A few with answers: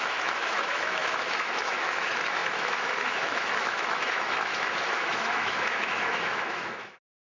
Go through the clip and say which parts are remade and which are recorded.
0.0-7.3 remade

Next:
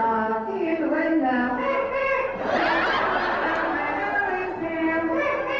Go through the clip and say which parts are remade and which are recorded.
0.0-2.0 remade; 2.0-5.6 recorded

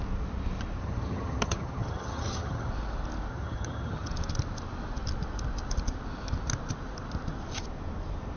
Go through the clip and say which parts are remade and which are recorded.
0.0-0.8 recorded; 0.8-2.7 remade; 2.7-3.3 recorded; 3.3-4.1 remade; 4.1-8.4 recorded

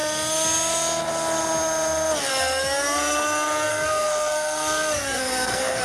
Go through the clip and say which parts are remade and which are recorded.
0.0-3.7 recorded; 3.7-5.8 remade